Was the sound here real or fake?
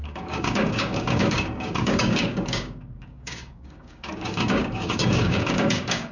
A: fake